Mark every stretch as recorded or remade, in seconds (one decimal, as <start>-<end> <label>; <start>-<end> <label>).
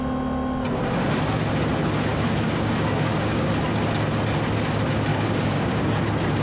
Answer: 0.0-2.1 recorded; 2.1-3.5 remade; 3.5-5.1 recorded; 5.1-5.9 remade; 5.9-6.4 recorded